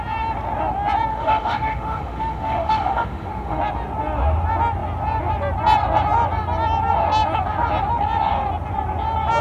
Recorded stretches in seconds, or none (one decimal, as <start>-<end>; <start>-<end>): 0.0-1.1; 3.6-9.4